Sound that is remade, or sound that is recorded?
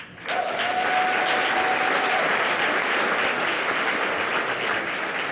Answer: recorded